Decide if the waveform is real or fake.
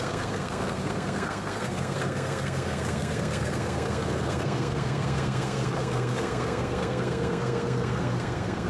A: fake